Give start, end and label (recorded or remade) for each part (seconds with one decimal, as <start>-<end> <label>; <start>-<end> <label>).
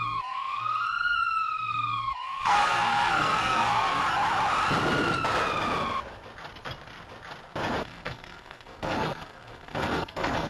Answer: 0.0-4.0 remade; 4.0-7.8 recorded; 7.8-10.5 remade